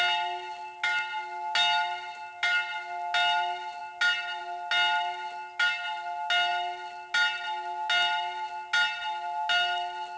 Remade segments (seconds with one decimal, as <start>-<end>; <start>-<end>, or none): none